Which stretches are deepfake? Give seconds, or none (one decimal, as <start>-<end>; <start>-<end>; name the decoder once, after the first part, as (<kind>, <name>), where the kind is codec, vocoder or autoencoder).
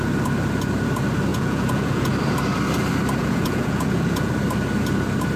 1.3-2.1 (vocoder, Vocos); 3.2-4.3